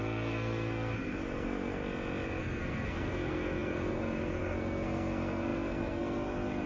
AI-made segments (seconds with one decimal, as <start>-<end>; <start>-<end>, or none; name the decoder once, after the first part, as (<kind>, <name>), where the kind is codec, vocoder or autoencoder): 0.0-1.8 (codec, SNAC); 2.4-6.7